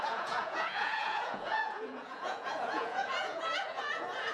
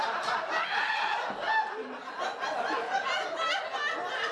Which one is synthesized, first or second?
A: first